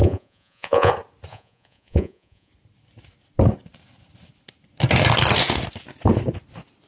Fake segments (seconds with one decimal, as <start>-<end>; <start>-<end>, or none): 0.0-0.9; 1.3-2.5